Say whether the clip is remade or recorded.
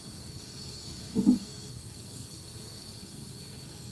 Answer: remade